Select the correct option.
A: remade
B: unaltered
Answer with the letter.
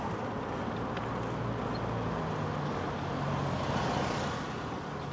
B